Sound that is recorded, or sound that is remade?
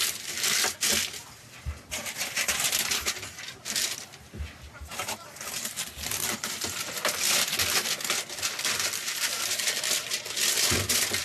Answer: recorded